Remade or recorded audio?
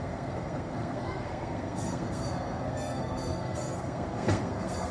remade